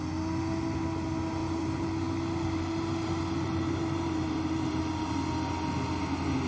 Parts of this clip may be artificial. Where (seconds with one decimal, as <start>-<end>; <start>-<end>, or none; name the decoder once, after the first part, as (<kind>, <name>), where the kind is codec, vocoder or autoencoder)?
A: 1.4-4.8 (vocoder, BigVGAN v2)

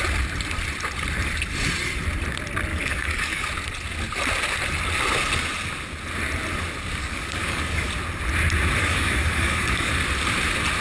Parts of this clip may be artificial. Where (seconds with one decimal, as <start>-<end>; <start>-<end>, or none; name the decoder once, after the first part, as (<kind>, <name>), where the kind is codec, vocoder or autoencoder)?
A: 2.7-3.5 (codec, DAC); 7.0-7.9; 8.8-9.9

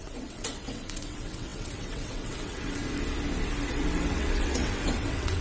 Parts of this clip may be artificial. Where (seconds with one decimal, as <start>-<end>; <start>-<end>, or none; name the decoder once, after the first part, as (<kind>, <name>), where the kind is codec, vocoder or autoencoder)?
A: 0.0-2.8 (vocoder, WaveNeXt); 3.7-5.4

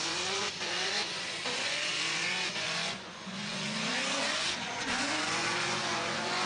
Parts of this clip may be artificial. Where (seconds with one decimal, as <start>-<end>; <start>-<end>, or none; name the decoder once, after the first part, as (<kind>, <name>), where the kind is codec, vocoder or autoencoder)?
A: 0.0-6.5 (vocoder, Vocos)

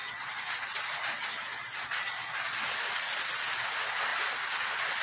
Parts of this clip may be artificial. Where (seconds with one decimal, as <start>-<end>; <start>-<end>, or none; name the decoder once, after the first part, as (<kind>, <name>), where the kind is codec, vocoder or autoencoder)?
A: none

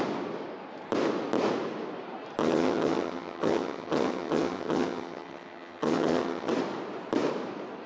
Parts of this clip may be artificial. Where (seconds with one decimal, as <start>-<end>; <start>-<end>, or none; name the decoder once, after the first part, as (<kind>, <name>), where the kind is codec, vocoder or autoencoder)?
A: 2.4-6.5 (vocoder, HiFi-GAN)

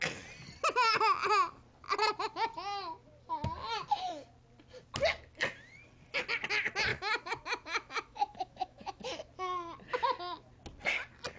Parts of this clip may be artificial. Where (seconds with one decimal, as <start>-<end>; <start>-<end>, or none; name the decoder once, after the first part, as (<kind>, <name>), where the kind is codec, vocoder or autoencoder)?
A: 6.9-9.0 (autoencoder, DAC-VAE)

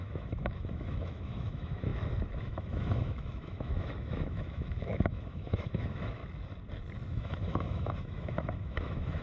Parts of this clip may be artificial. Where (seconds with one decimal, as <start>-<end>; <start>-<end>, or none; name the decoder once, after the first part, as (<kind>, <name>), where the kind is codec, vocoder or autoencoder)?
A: 0.0-1.9 (autoencoder, DAC-VAE); 2.4-6.2; 7.1-9.2